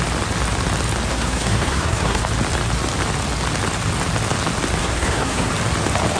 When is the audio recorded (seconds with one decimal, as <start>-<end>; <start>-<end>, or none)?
0.0-1.1; 2.2-4.8; 5.5-6.2